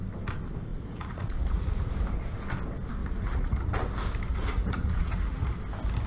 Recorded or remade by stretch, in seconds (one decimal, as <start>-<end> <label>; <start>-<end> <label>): 0.0-0.7 recorded; 0.7-1.9 remade; 1.9-3.0 recorded; 3.0-3.7 remade; 3.7-4.3 recorded; 4.3-5.4 remade; 5.4-6.1 recorded